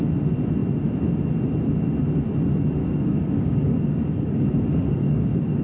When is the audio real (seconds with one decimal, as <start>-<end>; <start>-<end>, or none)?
0.0-2.8

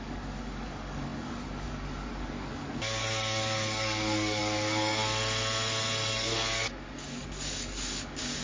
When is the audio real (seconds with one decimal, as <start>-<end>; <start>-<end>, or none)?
5.0-6.1